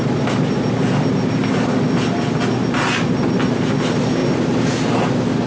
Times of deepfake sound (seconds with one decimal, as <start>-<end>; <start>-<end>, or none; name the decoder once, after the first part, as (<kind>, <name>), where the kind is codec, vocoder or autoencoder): none